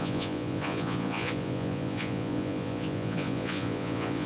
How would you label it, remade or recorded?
remade